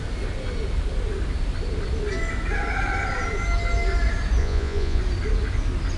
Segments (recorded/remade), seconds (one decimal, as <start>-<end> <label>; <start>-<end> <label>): 0.0-4.4 recorded; 4.4-5.0 remade; 5.0-6.0 recorded